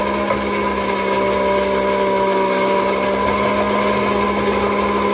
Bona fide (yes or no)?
yes